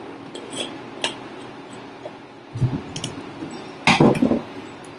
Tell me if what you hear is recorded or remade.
recorded